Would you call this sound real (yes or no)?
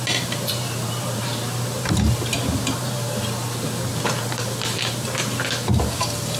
no